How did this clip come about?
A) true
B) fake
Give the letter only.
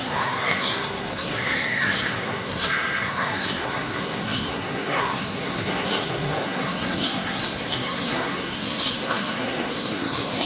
B